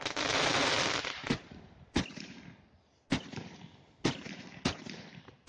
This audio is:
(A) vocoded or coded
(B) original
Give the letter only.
B